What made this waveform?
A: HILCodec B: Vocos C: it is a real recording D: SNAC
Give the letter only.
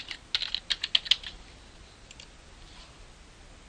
C